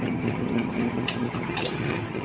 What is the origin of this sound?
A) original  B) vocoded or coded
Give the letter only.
B